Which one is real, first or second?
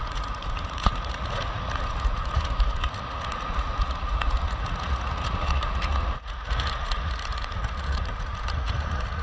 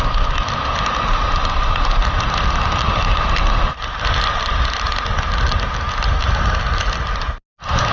second